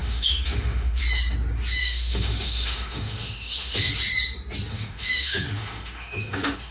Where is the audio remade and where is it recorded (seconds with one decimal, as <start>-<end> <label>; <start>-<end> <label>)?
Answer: 0.0-1.0 remade; 1.0-1.8 recorded; 1.8-3.9 remade; 3.9-4.7 recorded; 4.7-6.7 remade